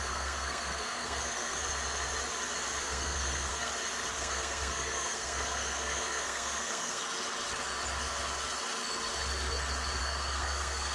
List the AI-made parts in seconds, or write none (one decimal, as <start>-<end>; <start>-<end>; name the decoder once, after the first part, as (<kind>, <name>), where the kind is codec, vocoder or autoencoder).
0.0-1.6 (codec, SNAC); 2.8-3.7; 4.2-7.0; 10.0-10.9